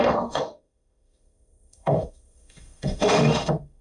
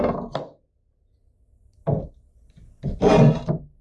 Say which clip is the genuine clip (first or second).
second